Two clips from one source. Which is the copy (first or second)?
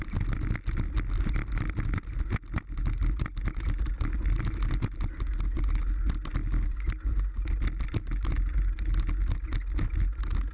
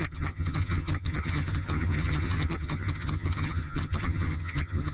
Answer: second